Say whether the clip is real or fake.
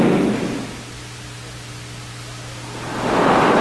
real